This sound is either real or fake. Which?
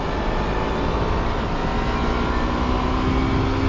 real